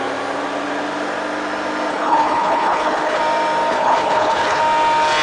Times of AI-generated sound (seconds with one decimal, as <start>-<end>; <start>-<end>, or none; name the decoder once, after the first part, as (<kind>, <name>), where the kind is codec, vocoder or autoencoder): 1.9-3.2 (codec, HILCodec); 3.7-4.6

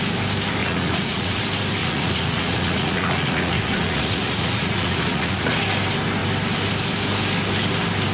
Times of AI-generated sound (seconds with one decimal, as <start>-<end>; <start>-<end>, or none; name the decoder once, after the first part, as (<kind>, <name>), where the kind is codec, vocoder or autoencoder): 0.6-1.4 (vocoder, Vocos); 1.8-5.6

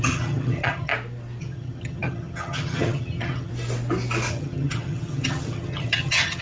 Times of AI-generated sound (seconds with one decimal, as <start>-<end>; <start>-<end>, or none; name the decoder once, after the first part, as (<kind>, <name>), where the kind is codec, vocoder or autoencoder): 0.0-0.9 (vocoder, HiFi-GAN); 1.4-3.5; 4.3-6.4

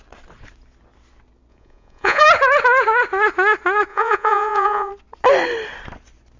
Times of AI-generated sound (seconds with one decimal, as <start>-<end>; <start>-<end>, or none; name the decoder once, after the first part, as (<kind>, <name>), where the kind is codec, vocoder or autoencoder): 1.5-2.2 (vocoder, Vocos); 3.9-4.9

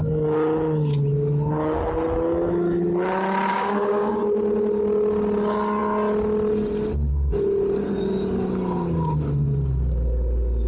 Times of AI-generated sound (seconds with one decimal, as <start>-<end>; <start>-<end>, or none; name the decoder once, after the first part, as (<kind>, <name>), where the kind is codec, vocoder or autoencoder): 3.5-4.2 (codec, DAC)